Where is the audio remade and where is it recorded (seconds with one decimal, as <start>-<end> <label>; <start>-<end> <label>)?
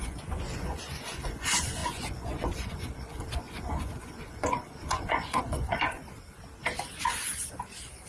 0.0-6.0 remade; 6.0-8.1 recorded